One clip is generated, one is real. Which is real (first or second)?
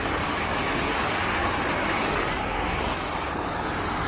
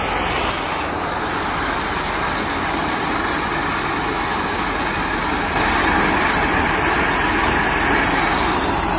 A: second